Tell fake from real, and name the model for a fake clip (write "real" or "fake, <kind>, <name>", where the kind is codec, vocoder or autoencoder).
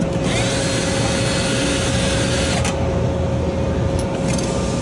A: real